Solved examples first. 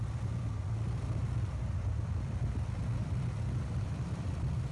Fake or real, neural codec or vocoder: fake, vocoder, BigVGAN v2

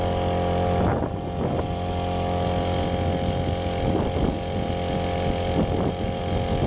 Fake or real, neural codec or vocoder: real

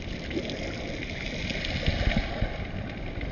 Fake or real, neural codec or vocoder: real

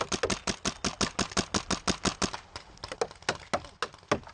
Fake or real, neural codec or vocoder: real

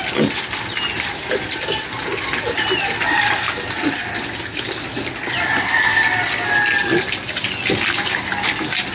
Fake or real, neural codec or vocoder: real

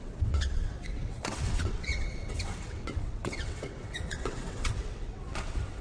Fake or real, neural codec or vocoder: fake, vocoder, WaveNeXt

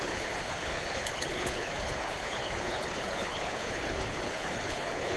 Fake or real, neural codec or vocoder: fake, codec, HILCodec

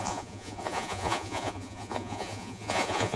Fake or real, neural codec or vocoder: fake, vocoder, Vocos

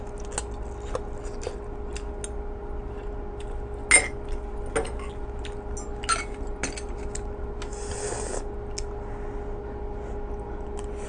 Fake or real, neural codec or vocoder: real